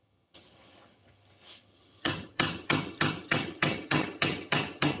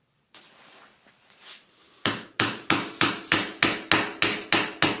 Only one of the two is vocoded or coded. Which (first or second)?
first